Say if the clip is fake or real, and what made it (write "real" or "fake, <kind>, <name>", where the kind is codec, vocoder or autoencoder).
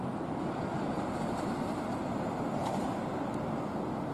real